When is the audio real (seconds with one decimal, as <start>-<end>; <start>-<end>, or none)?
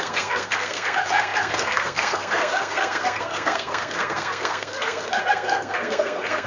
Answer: none